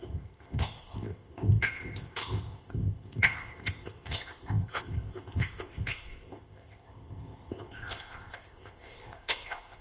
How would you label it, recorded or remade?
remade